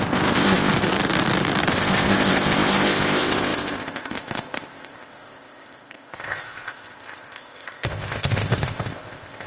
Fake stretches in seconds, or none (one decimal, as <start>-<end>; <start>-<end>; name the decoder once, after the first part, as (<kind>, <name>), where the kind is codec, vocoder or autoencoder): 0.0-0.7 (codec, ZipCodec); 1.7-9.5